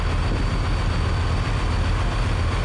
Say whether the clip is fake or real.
real